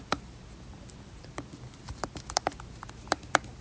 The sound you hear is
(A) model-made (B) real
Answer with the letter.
B